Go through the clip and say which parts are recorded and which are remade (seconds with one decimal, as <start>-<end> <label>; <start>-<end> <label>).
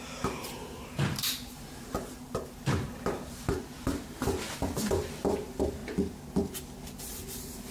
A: 0.0-5.8 remade; 5.8-7.1 recorded; 7.1-7.7 remade